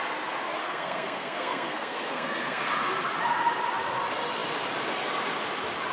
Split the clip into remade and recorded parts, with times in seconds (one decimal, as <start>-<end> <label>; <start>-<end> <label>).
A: 0.0-0.6 recorded; 0.6-2.7 remade; 2.7-5.9 recorded